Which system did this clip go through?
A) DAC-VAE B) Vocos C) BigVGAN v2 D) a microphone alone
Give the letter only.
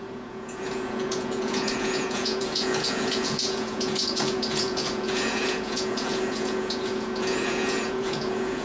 B